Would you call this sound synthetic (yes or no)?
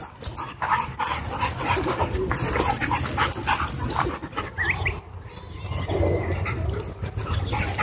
no